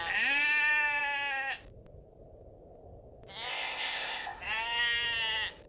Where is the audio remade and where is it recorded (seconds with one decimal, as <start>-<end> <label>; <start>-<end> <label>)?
0.0-3.5 recorded; 3.5-4.4 remade; 4.4-5.7 recorded